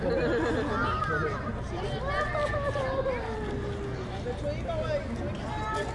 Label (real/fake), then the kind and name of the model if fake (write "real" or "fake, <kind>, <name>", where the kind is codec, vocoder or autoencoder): real